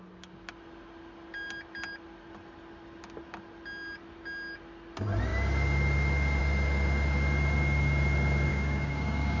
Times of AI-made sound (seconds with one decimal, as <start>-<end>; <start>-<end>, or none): 8.5-9.4